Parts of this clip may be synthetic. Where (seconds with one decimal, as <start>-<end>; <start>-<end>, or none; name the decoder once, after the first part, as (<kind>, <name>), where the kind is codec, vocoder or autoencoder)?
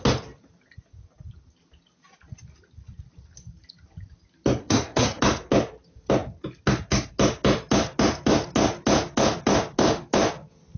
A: 4.6-5.2 (codec, SNAC)